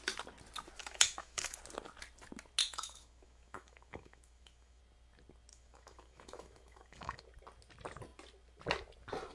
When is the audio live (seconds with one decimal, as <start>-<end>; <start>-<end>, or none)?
0.0-0.8; 1.6-2.6; 4.8-5.5; 7.2-9.3